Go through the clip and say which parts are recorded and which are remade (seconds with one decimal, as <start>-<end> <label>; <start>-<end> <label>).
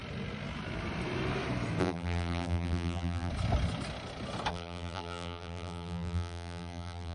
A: 0.0-1.8 recorded; 1.8-3.3 remade; 3.3-4.5 recorded; 4.5-7.1 remade